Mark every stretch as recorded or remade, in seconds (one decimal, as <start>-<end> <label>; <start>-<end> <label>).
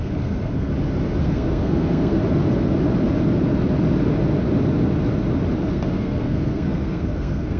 0.0-0.7 remade; 0.7-1.2 recorded; 1.2-2.2 remade; 2.2-5.6 recorded; 5.6-7.6 remade